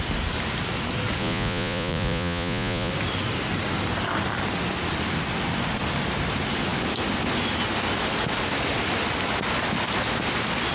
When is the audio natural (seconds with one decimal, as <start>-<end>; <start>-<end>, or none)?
0.0-1.2; 2.9-10.7

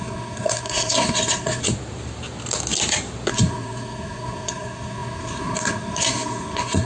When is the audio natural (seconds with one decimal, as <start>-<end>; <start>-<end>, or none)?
1.6-3.3

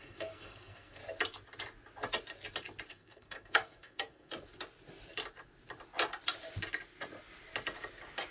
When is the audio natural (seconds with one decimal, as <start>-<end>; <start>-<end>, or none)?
1.0-2.9; 4.3-8.3

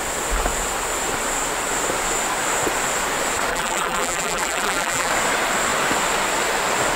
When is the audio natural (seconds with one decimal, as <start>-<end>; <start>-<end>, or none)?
0.0-3.5; 5.1-7.0

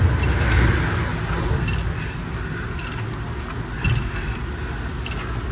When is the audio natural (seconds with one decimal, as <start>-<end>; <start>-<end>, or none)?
0.0-5.5

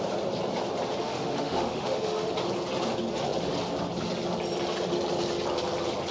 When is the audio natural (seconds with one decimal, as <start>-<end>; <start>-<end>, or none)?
0.0-1.0; 2.3-6.1

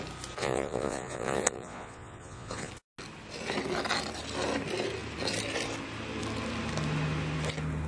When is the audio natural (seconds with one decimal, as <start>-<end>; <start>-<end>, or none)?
0.0-0.4; 2.7-7.9

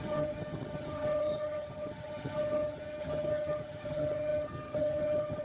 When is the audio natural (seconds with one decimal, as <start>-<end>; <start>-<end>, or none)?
none